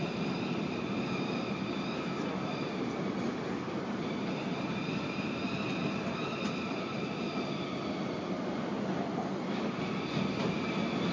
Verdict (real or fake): real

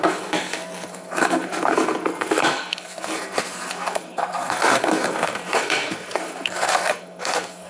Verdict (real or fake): fake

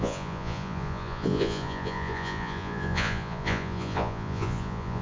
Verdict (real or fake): fake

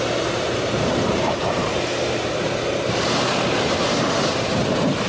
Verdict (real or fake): fake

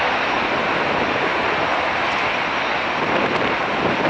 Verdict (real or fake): real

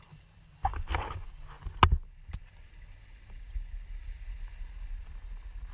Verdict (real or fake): real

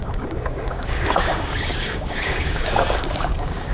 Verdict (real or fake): fake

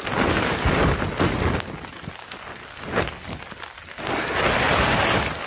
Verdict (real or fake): real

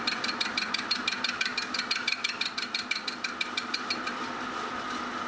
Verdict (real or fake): real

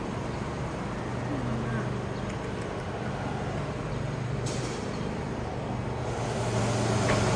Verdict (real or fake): real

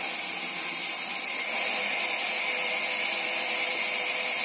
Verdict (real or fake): real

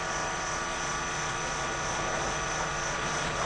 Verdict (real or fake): fake